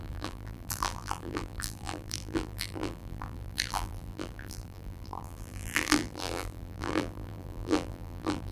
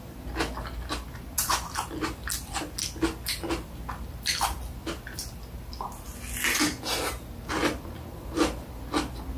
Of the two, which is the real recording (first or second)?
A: second